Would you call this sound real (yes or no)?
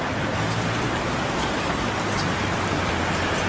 yes